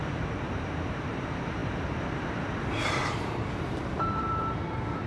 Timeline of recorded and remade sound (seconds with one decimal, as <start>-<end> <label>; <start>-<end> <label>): 0.0-5.1 remade